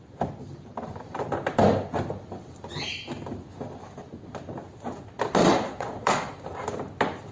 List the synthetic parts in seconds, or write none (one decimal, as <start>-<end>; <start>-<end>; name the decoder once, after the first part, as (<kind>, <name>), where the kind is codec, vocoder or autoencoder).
5.4-6.3 (vocoder, Vocos)